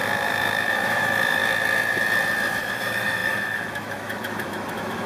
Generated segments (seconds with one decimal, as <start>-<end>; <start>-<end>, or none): 0.0-1.4; 2.6-5.1